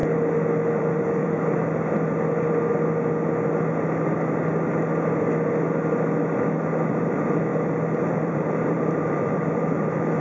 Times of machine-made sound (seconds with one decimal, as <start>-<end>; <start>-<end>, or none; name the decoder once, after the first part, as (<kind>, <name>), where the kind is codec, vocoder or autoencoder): 0.8-1.6 (vocoder, BigVGAN v2); 6.9-7.5; 8.0-10.2